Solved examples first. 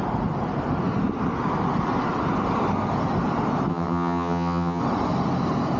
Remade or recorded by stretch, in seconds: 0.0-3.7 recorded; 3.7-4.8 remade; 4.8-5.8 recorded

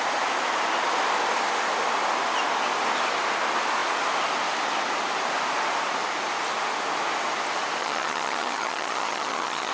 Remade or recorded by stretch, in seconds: 0.0-7.8 recorded; 7.8-9.7 remade

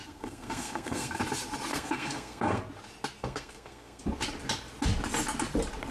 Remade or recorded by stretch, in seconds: 0.0-1.2 remade; 1.2-1.7 recorded; 1.7-2.6 remade; 2.6-3.2 recorded; 3.2-4.0 remade; 4.0-5.9 recorded